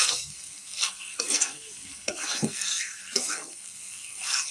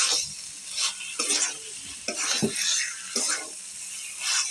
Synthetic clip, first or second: first